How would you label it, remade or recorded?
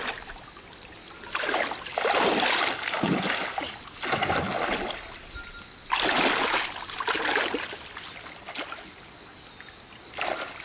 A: recorded